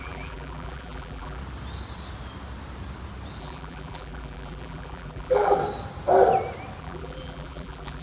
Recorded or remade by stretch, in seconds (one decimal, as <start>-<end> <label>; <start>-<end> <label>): 0.0-1.4 remade; 1.4-3.4 recorded; 3.4-5.6 remade; 5.6-6.8 recorded; 6.8-8.0 remade